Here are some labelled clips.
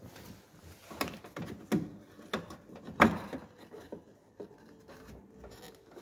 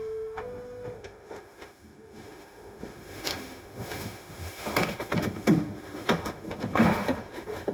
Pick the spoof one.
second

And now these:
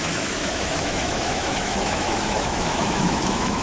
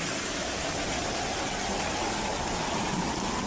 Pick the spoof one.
first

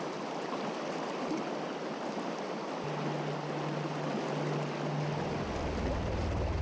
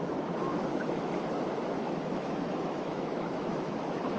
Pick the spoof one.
second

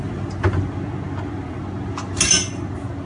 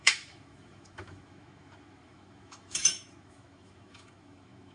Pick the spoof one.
second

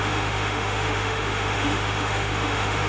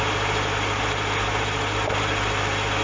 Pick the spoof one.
first